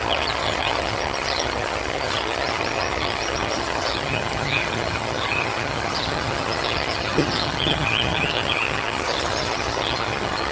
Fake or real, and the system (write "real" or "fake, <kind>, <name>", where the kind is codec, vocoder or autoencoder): fake, vocoder, HiFi-GAN